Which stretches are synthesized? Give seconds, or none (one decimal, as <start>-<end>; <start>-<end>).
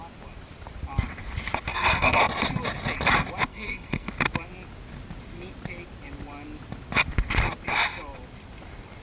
1.7-2.2; 3.5-4.1